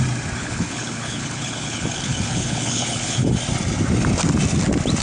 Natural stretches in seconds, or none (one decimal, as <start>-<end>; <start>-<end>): 0.0-0.4; 3.4-5.0